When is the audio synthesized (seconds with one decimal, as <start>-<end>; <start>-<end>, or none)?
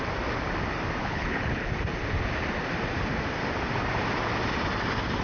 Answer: 1.0-1.7